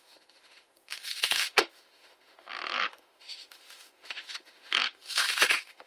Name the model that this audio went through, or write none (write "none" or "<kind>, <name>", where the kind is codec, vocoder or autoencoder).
autoencoder, DAC-VAE